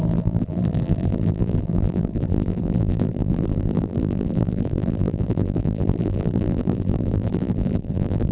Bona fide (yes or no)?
no